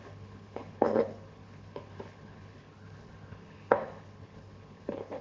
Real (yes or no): no